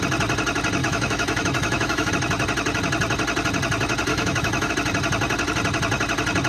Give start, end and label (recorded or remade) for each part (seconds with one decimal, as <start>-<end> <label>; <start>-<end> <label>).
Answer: 0.0-0.8 recorded; 0.8-2.1 remade; 2.1-4.1 recorded; 4.1-4.7 remade; 4.7-6.5 recorded